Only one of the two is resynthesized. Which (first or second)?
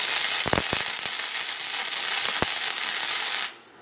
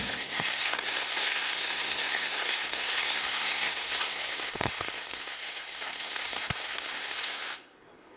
second